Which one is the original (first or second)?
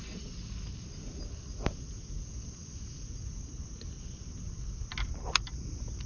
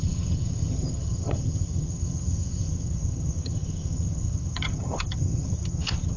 first